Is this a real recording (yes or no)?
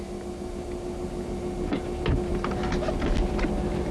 yes